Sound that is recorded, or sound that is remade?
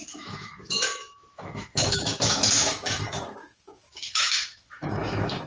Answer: remade